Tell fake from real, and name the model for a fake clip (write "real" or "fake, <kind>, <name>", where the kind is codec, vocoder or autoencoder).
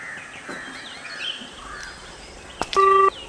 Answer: real